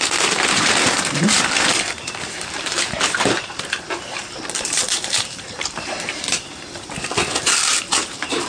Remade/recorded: remade